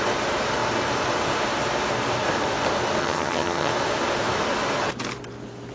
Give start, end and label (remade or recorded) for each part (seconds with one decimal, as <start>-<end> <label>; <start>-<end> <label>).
0.0-3.0 recorded; 3.0-3.7 remade; 3.7-5.7 recorded